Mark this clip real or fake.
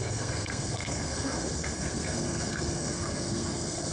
fake